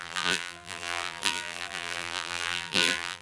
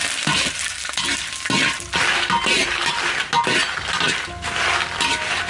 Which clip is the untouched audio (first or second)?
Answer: second